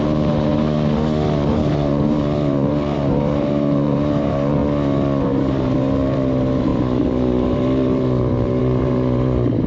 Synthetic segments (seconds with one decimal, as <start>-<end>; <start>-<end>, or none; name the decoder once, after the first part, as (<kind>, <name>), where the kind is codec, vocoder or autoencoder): 0.0-0.5 (vocoder, BigVGAN v2); 1.5-4.6; 5.2-9.7